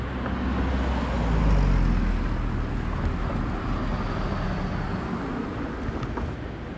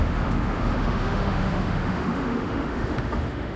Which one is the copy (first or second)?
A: second